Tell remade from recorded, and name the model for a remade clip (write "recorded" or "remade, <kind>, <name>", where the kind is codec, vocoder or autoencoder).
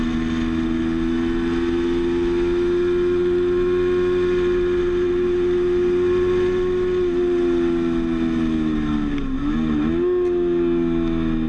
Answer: recorded